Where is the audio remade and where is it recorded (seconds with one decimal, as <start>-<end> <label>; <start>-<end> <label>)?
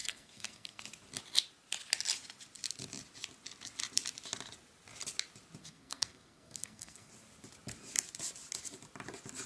0.0-0.8 remade; 0.8-5.6 recorded; 5.6-7.1 remade; 7.1-9.5 recorded